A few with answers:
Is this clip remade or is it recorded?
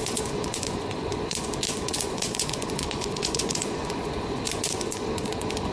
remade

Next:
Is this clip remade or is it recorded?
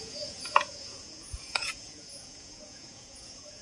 remade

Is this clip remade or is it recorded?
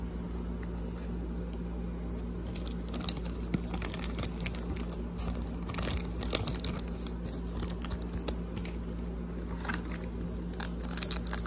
recorded